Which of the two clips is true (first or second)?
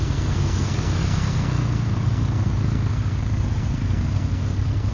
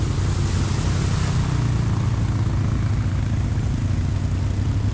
second